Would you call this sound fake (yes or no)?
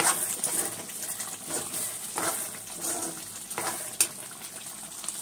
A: no